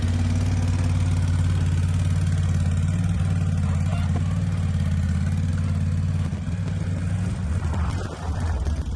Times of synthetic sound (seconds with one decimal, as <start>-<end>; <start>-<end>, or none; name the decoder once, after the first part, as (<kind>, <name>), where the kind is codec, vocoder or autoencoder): none